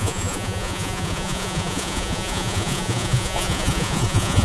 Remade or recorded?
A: remade